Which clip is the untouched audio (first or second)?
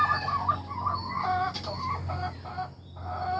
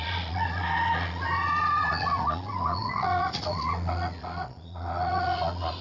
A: first